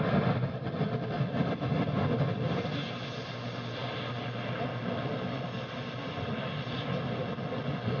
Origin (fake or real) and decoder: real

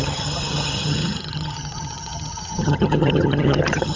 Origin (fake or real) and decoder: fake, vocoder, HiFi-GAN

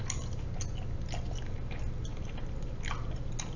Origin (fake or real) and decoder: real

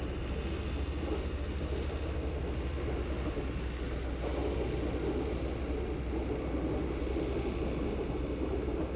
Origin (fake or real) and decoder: real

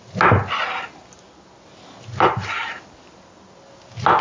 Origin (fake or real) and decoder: real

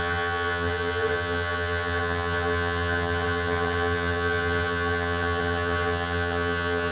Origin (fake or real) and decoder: fake, vocoder, HiFi-GAN